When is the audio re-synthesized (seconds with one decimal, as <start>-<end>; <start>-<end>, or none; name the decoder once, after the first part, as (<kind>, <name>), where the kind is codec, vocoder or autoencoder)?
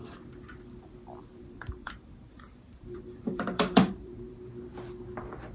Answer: 1.2-4.5 (vocoder, BigVGAN v2)